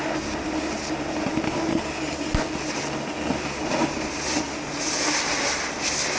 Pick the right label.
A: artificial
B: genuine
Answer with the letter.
B